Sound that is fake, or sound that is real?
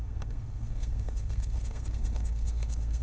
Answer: fake